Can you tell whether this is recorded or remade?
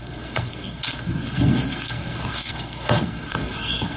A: remade